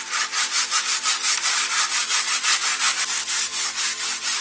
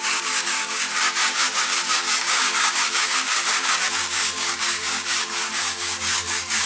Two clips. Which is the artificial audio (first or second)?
second